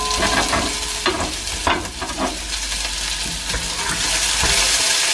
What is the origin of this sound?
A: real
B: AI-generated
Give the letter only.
A